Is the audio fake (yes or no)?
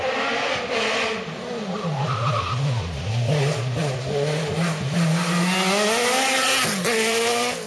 no